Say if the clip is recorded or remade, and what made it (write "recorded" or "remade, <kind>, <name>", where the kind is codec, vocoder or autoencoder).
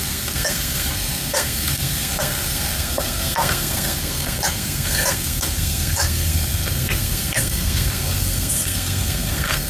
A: remade, codec, SNAC